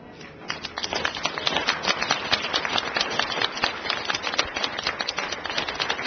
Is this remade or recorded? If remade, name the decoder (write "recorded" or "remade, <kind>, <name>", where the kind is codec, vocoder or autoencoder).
recorded